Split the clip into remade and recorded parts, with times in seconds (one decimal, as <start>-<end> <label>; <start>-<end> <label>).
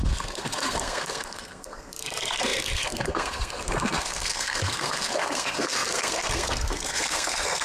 0.0-7.6 remade